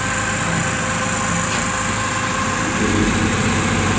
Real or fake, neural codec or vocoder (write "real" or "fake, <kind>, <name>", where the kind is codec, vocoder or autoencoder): real